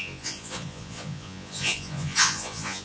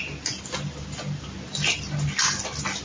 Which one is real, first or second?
second